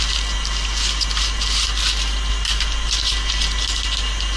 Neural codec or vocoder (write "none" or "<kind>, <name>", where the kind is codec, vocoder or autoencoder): none